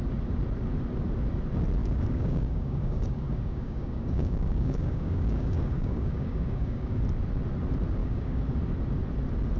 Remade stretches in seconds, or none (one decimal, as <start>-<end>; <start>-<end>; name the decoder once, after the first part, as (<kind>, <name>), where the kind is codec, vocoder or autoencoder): 1.8-7.0 (codec, DAC); 8.0-8.6